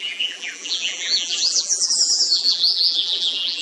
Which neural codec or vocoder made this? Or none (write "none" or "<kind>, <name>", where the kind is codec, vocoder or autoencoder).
vocoder, BigVGAN v2